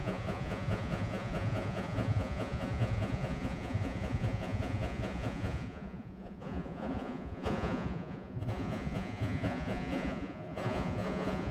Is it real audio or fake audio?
fake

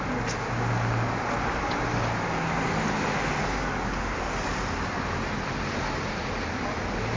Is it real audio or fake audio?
real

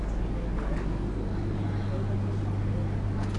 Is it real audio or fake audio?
real